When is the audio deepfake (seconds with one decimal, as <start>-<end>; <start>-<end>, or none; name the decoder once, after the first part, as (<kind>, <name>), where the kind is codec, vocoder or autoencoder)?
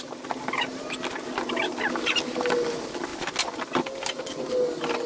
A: none